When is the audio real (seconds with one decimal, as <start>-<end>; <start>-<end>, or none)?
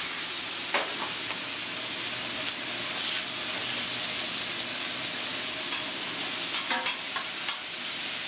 0.0-8.3